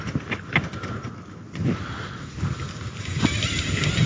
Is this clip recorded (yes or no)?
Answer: yes